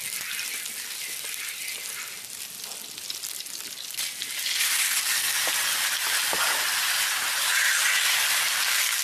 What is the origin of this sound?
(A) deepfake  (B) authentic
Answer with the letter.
B